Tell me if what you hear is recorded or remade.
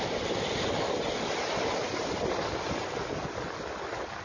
recorded